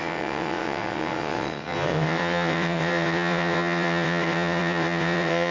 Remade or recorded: remade